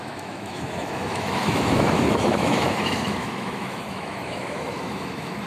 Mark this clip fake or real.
fake